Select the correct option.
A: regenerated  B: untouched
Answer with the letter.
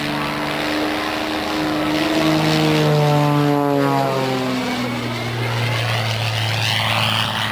B